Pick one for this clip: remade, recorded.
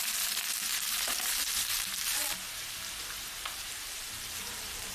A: remade